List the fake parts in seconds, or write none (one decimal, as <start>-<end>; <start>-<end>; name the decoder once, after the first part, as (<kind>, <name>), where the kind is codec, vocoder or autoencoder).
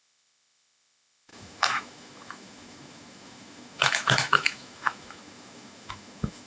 0.0-6.5 (autoencoder, DAC-VAE)